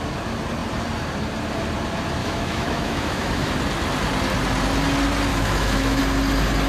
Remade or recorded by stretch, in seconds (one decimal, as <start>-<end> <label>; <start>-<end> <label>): 0.0-2.2 recorded; 2.2-3.5 remade; 3.5-5.3 recorded; 5.3-6.0 remade; 6.0-6.7 recorded